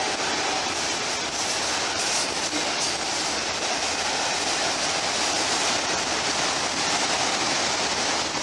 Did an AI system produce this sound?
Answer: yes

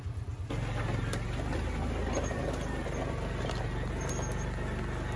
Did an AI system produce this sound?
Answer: no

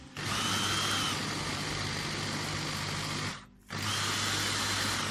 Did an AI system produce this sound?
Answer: no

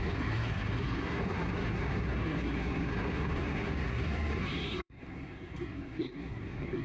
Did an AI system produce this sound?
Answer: yes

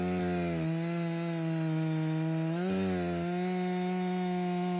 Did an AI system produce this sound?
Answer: no